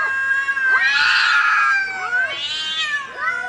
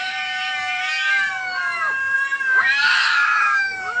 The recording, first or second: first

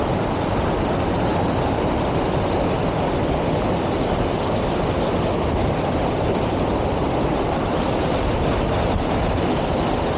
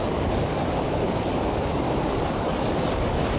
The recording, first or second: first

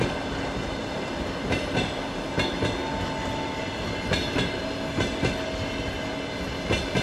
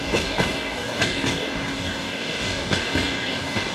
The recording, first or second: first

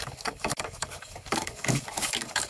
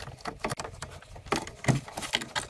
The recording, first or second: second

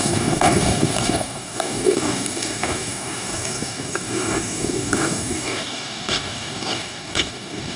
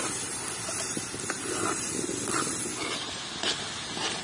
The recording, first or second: second